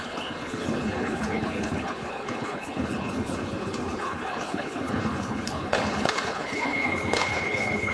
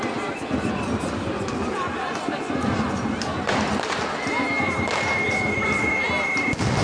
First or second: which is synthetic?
first